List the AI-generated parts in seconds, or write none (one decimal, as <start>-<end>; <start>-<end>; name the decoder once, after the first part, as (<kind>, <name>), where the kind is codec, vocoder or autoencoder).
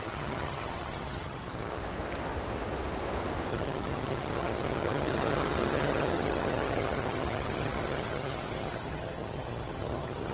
0.0-1.8 (vocoder, HiFi-GAN); 3.5-10.3